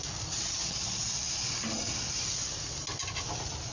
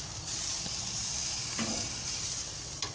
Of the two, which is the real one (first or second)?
first